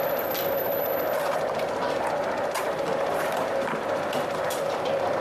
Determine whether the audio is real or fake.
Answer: fake